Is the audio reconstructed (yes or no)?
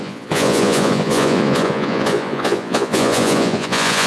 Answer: yes